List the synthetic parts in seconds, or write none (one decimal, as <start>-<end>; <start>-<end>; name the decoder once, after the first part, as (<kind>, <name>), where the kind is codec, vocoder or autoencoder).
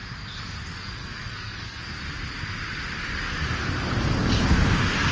1.0-1.8 (codec, SNAC)